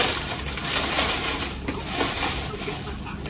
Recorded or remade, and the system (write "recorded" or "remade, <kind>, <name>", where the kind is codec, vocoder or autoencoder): recorded